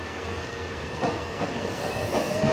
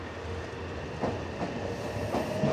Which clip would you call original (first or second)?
second